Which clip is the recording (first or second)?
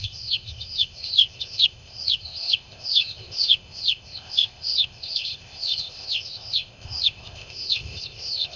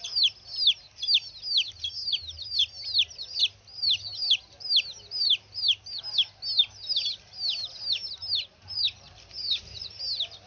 second